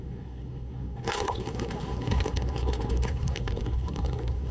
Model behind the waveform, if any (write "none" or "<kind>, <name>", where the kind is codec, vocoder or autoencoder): codec, SNAC